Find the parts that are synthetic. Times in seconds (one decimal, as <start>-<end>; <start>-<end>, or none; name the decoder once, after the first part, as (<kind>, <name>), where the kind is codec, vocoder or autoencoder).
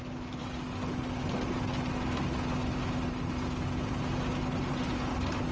none